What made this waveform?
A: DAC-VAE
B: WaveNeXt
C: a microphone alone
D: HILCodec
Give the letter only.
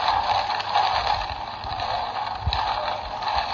C